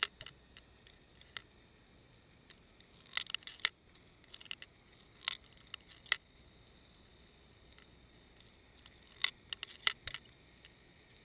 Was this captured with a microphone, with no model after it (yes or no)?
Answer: yes